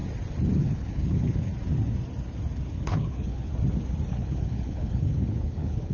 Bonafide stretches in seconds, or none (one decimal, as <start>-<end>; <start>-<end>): 0.0-0.6; 1.5-2.7; 3.5-4.1